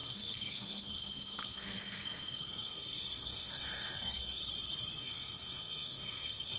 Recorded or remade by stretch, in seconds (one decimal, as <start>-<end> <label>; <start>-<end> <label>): 0.0-4.4 remade; 4.4-5.0 recorded; 5.0-6.6 remade